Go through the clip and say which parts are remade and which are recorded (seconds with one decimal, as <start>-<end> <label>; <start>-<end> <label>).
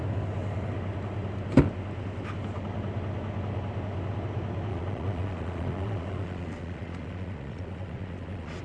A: 0.0-4.7 recorded; 4.7-8.6 remade